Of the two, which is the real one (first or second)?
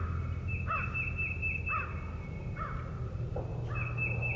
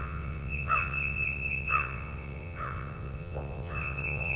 first